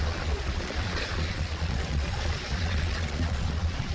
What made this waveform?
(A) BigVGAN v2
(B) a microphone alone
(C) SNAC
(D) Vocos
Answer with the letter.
D